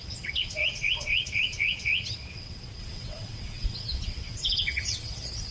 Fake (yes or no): yes